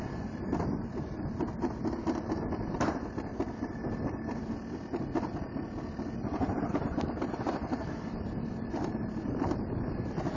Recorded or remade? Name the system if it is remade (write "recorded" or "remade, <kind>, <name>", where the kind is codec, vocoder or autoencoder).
remade, vocoder, BigVGAN v2